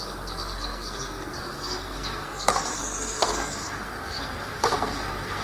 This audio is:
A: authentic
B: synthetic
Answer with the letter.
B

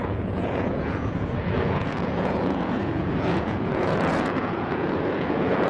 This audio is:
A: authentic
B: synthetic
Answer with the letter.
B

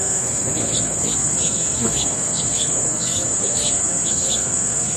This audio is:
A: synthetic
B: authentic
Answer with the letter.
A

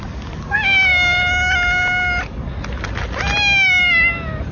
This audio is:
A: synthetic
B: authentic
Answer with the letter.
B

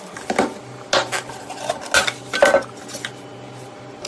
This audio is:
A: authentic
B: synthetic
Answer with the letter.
A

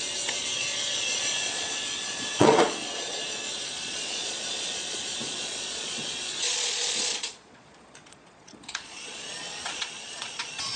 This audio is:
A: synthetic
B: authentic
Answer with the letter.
A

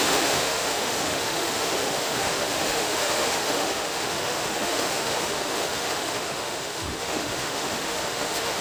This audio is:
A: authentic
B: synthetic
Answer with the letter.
B